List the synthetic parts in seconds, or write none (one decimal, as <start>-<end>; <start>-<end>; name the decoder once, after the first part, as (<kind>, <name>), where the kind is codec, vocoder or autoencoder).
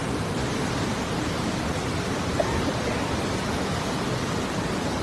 none